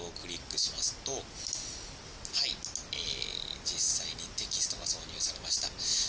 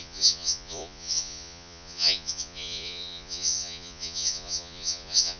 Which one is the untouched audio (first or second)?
first